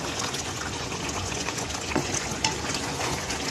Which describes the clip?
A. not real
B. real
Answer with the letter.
A